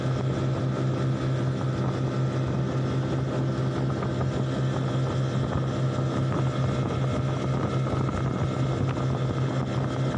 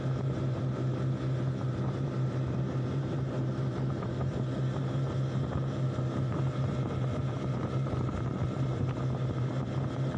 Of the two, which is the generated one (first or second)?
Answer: second